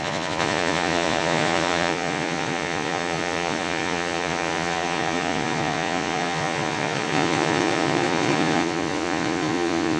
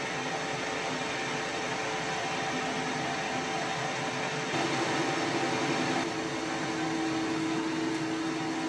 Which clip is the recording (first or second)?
second